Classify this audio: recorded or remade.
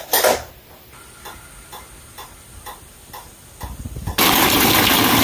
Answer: recorded